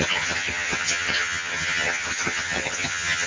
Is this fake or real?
fake